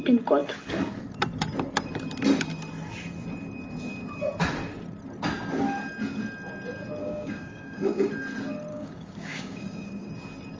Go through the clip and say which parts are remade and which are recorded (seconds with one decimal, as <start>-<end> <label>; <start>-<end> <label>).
0.0-7.0 recorded; 7.0-8.1 remade; 8.1-8.7 recorded; 8.7-10.1 remade; 10.1-10.6 recorded